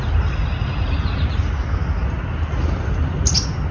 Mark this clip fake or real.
real